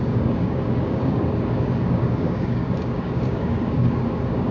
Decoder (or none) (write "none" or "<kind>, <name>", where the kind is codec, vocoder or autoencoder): codec, DAC